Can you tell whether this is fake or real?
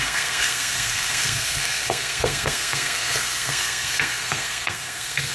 fake